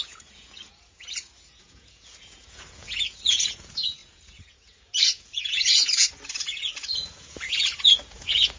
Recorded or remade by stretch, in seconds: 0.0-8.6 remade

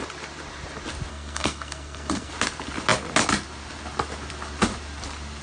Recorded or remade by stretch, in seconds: 0.0-1.1 recorded; 1.1-2.3 remade; 2.3-5.4 recorded

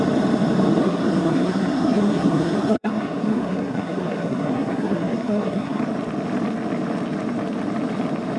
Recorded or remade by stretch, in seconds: 0.0-0.8 recorded; 0.8-5.8 remade; 5.8-8.4 recorded

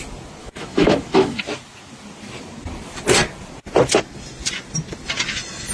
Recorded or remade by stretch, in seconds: 0.0-0.4 recorded; 0.4-1.4 remade; 1.4-5.7 recorded

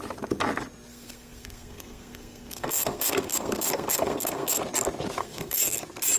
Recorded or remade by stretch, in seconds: 0.0-0.9 recorded; 0.9-4.6 remade; 4.6-5.2 recorded; 5.2-5.8 remade; 5.8-6.2 recorded

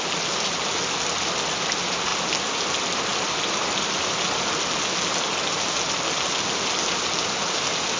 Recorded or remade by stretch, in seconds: 0.0-8.0 recorded